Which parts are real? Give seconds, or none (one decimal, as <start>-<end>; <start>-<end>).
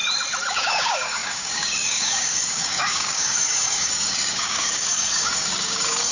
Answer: 0.0-0.5